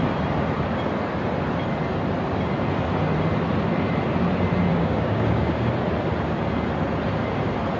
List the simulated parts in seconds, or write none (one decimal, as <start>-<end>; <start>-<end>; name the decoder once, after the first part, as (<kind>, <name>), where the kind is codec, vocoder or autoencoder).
4.7-5.7 (codec, DAC)